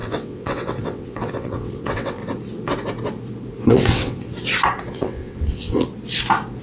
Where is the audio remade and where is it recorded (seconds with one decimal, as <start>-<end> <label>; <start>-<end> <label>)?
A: 0.0-2.2 remade; 2.2-3.6 recorded; 3.6-4.3 remade; 4.3-4.9 recorded; 4.9-5.9 remade; 5.9-6.6 recorded